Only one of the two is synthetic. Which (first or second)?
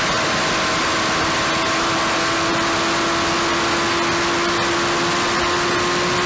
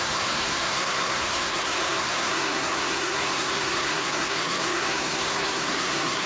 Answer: second